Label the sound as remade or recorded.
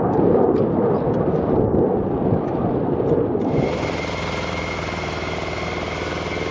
recorded